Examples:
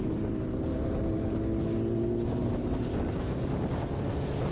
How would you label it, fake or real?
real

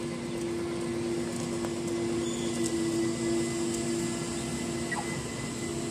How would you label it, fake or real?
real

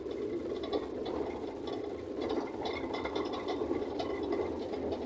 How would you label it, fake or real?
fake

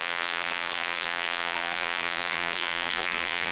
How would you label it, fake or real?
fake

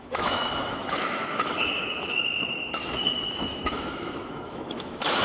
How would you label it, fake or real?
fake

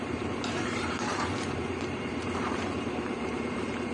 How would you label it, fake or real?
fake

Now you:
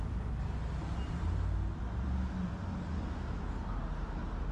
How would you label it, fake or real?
real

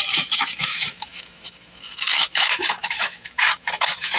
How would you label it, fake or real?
fake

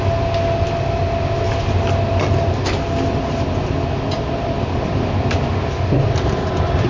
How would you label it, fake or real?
real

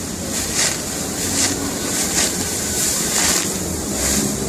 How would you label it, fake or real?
fake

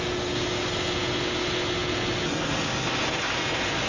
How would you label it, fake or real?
real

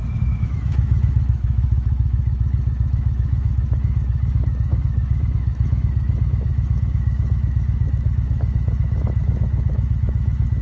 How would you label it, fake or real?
fake